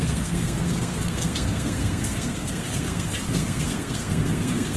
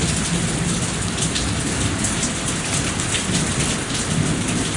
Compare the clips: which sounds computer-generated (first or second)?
first